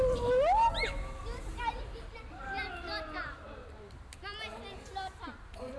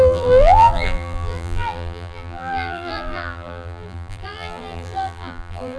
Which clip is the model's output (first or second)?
second